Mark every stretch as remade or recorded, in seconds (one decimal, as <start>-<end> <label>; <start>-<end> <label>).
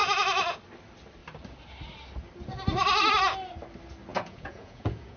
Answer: 0.0-0.6 remade; 0.6-4.1 recorded; 4.1-5.2 remade